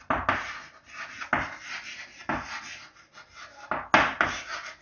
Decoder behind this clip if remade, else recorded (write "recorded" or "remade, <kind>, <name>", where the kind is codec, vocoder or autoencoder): recorded